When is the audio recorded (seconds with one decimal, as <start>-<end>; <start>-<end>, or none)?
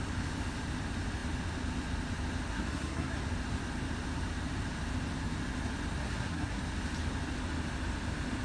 0.0-2.5; 3.2-6.0; 6.6-8.4